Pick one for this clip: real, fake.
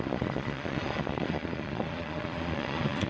fake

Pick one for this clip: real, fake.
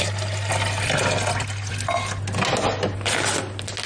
real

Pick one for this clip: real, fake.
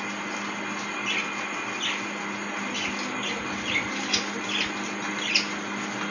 real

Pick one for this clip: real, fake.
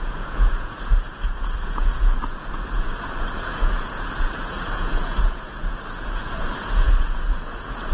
fake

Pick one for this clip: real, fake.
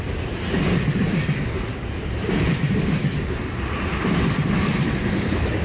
real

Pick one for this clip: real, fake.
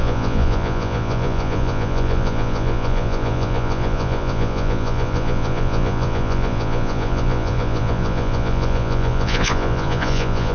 fake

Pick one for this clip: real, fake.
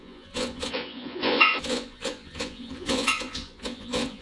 fake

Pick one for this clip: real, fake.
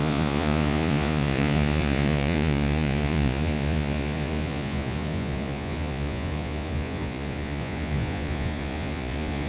fake